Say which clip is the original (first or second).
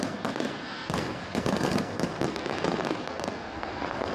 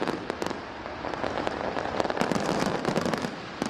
second